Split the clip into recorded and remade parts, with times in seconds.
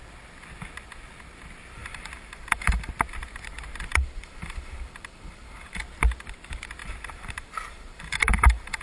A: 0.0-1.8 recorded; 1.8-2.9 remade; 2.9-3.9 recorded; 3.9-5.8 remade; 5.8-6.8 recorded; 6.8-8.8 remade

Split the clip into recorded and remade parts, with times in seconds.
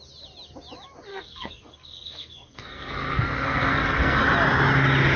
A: 0.0-1.1 recorded; 1.1-4.2 remade; 4.2-5.2 recorded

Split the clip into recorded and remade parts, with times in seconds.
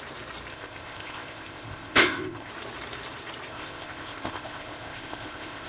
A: 0.0-0.5 recorded; 0.5-2.5 remade; 2.5-3.5 recorded; 3.5-5.7 remade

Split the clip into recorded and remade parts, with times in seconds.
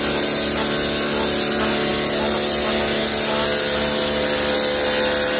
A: 0.0-5.4 recorded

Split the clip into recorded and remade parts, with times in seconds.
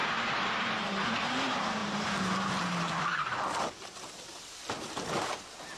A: 0.0-0.7 remade; 0.7-1.8 recorded; 1.8-4.7 remade; 4.7-5.8 recorded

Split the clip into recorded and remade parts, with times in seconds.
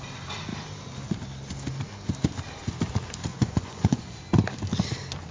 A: 0.0-3.3 recorded; 3.3-4.1 remade; 4.1-5.3 recorded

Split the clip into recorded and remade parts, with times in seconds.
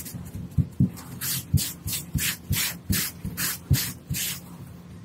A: 0.0-5.0 recorded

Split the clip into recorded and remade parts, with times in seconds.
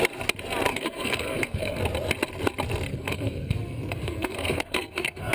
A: 0.0-0.7 recorded; 0.7-1.8 remade; 1.8-2.9 recorded; 2.9-5.3 remade